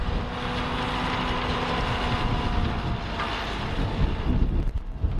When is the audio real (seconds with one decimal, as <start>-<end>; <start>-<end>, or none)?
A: 0.0-5.2